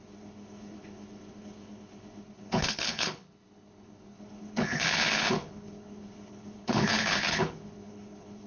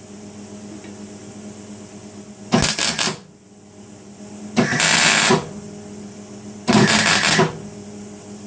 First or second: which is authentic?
second